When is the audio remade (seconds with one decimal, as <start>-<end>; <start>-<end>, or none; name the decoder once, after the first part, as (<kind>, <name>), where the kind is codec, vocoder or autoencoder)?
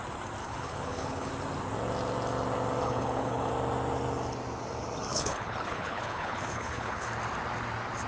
0.4-1.3 (codec, HILCodec); 2.8-3.5; 5.1-7.1